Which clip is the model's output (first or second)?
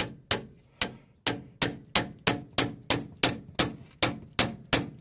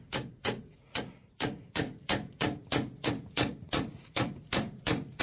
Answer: second